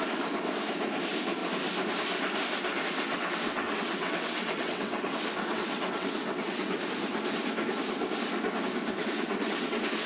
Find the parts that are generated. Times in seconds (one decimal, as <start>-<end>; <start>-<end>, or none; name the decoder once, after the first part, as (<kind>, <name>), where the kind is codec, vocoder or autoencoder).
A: 3.1-6.8 (vocoder, WaveNeXt); 9.0-10.1